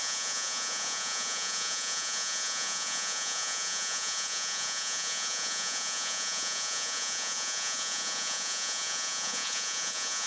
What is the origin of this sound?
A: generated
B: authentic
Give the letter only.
A